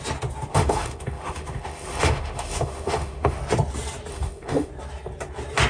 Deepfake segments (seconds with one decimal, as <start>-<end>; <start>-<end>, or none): 0.5-3.4; 4.1-4.7